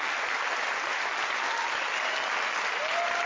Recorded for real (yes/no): yes